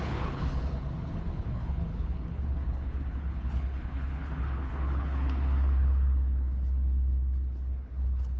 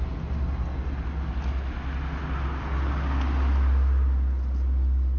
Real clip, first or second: second